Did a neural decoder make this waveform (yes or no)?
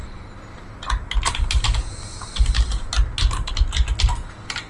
no